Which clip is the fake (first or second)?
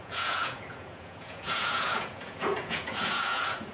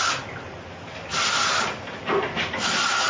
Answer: first